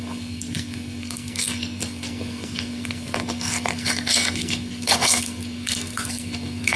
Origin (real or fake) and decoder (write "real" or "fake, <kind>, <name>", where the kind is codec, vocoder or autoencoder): fake, codec, SNAC